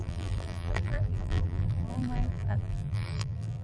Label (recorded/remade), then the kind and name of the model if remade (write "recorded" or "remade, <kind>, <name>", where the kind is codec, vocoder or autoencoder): remade, vocoder, BigVGAN v2